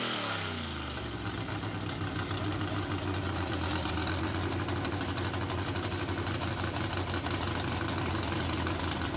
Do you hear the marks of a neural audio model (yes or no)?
yes